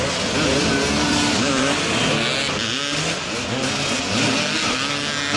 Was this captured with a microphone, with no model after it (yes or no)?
yes